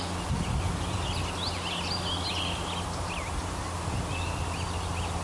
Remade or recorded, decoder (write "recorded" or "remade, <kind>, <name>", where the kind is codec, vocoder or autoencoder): recorded